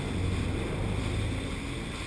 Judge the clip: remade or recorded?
recorded